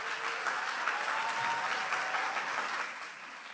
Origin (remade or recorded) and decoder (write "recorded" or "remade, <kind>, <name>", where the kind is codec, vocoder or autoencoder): recorded